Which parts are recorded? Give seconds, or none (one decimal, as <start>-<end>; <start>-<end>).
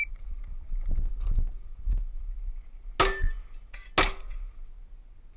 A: 0.0-5.4